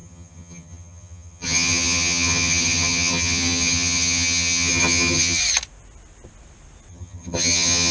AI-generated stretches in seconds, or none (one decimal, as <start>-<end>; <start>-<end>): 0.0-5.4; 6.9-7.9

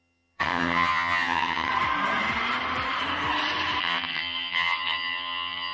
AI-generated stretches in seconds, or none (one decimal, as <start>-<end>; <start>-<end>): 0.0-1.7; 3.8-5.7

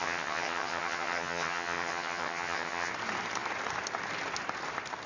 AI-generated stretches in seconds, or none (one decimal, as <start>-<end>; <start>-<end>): 0.0-2.9

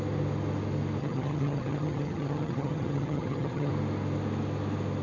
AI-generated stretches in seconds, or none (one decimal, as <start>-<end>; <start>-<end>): 1.0-3.7

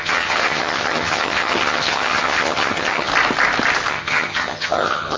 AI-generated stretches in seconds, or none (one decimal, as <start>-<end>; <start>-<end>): 0.0-3.1; 3.9-5.2